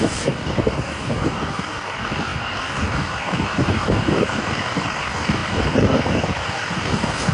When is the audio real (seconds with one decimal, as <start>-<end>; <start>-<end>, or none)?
none

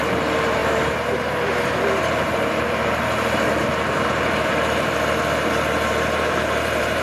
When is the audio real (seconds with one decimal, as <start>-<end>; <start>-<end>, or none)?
none

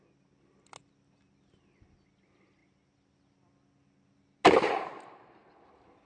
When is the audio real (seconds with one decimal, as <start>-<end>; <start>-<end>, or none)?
0.0-6.1